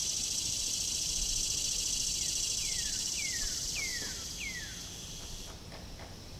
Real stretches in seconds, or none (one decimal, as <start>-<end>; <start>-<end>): 1.2-2.6; 3.5-6.4